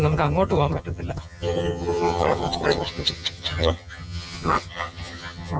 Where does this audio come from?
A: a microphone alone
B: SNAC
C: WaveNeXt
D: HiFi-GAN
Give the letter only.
D